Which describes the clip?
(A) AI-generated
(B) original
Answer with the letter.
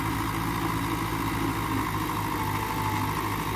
B